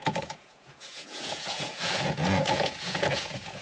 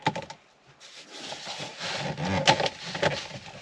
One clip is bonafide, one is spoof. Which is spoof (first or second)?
first